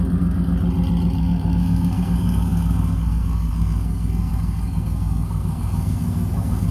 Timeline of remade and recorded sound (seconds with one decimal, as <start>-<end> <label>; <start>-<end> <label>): 0.0-0.5 remade; 0.5-1.2 recorded; 1.2-6.7 remade